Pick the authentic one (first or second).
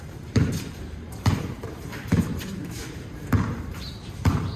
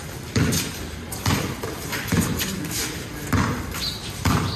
second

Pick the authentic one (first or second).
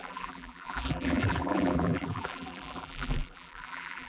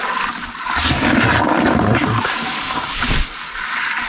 second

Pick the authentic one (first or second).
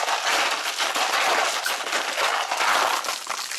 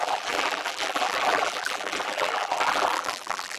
first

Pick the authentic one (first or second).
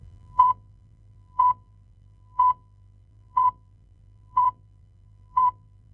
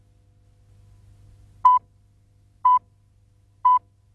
second